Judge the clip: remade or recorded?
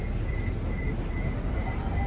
recorded